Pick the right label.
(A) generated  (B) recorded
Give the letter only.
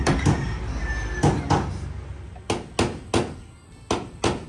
B